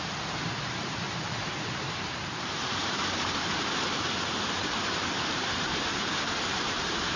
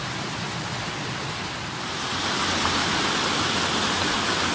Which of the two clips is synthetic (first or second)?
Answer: first